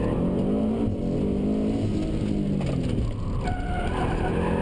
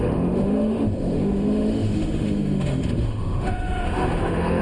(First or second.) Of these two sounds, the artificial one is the second